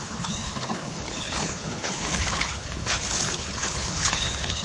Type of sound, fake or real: fake